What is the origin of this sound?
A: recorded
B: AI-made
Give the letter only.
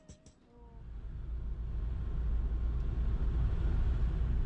A